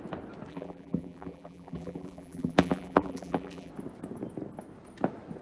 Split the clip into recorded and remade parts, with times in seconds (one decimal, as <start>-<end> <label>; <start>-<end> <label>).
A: 0.0-0.5 recorded; 0.5-3.7 remade; 3.7-5.4 recorded